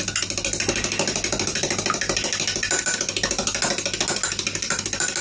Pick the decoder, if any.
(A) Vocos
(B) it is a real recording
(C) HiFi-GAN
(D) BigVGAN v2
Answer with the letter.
B